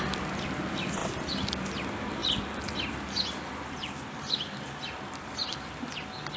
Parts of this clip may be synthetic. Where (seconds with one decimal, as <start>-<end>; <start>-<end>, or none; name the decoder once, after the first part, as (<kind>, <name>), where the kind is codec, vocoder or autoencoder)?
none